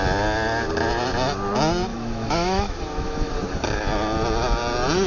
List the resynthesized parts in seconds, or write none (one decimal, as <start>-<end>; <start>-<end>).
1.9-3.3